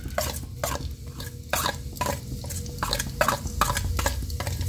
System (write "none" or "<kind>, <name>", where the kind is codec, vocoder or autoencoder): none